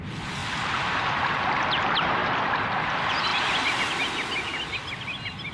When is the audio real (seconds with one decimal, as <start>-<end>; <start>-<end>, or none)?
0.0-2.2; 2.8-3.3; 3.8-5.5